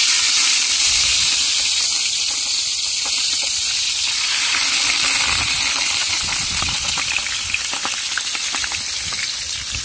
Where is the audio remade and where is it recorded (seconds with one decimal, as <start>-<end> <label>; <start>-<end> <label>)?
0.0-6.0 recorded; 6.0-6.9 remade; 6.9-9.8 recorded